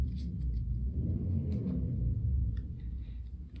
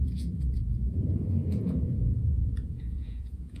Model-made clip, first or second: second